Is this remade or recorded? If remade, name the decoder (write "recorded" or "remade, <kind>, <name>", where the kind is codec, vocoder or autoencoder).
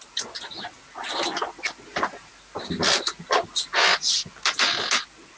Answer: recorded